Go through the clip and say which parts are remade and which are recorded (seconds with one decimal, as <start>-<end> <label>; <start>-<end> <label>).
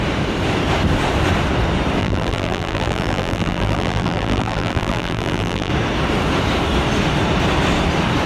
0.0-2.0 recorded; 2.0-5.7 remade; 5.7-8.3 recorded